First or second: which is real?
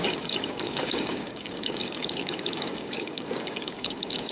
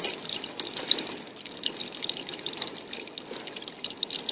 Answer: second